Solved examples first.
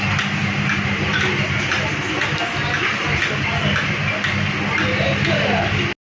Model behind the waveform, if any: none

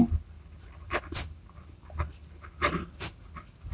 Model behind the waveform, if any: none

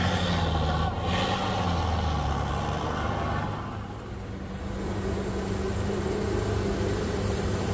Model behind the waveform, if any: none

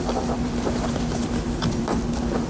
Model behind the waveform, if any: vocoder, BigVGAN v2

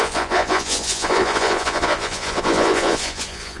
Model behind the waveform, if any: vocoder, Vocos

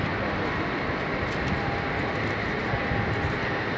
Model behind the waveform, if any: none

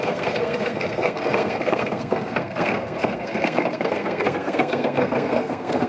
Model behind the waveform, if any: codec, SNAC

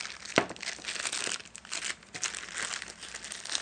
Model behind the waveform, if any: none